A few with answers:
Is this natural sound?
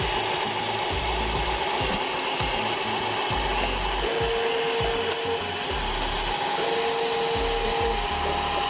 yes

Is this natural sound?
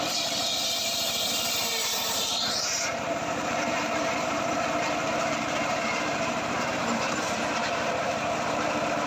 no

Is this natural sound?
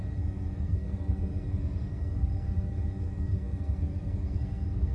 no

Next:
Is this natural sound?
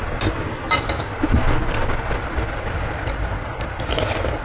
yes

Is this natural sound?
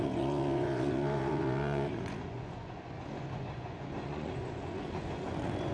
no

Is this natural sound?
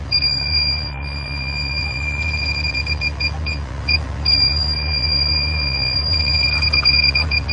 no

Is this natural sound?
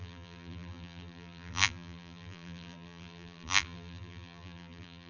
no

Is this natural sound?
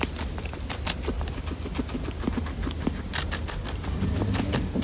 yes